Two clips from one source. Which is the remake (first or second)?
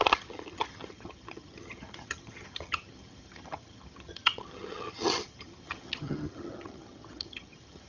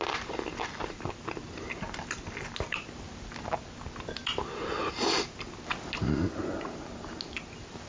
first